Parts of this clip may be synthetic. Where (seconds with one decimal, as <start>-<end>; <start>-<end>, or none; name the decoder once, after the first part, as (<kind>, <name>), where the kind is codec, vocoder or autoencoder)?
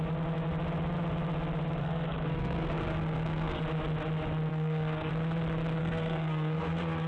1.8-3.6 (codec, SNAC); 4.5-5.1; 5.8-7.1